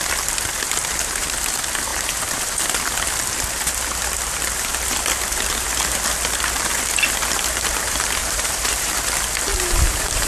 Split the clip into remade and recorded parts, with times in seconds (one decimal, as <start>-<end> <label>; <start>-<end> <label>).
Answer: 0.0-1.9 recorded; 1.9-2.4 remade; 2.4-8.2 recorded; 8.2-8.9 remade; 8.9-9.5 recorded; 9.5-10.3 remade